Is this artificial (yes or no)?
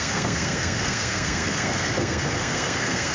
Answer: yes